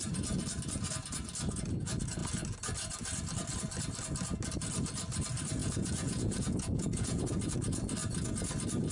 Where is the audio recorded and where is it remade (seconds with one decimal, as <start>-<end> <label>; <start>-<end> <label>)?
0.0-5.6 recorded; 5.6-7.2 remade; 7.2-8.9 recorded